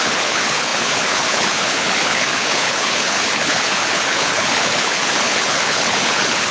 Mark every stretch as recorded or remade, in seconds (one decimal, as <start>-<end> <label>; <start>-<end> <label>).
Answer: 0.0-6.5 remade